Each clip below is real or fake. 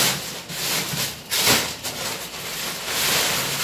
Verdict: real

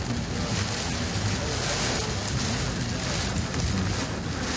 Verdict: real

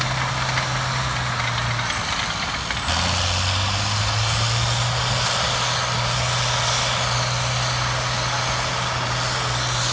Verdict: real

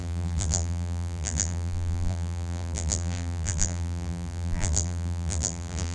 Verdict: fake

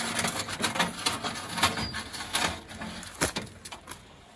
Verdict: real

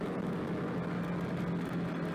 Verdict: real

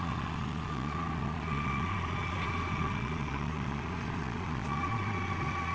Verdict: fake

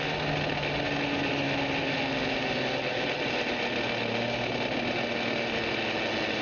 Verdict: real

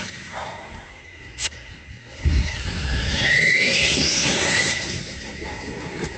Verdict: fake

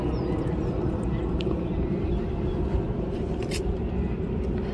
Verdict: fake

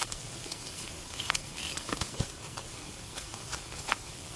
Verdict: fake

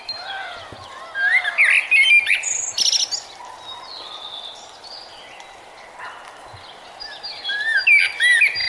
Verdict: real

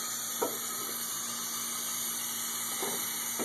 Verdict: real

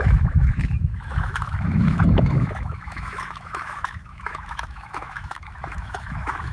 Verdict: fake